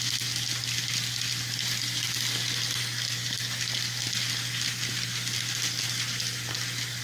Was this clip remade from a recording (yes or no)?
no